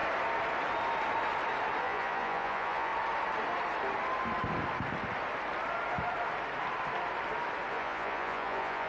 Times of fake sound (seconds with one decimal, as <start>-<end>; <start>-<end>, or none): 1.8-2.9; 7.7-8.9